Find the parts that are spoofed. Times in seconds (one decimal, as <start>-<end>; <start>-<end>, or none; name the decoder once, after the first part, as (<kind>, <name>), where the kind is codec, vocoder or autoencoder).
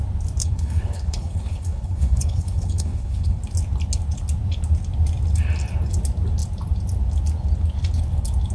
0.4-3.4 (codec, HILCodec)